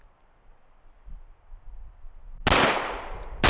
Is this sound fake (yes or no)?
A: no